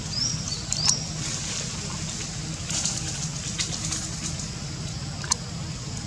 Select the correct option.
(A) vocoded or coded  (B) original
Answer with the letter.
B